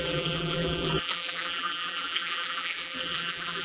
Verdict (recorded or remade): remade